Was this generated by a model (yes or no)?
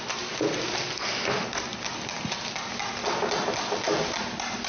no